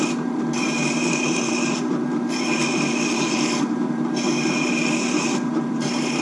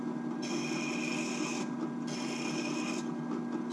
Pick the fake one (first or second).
first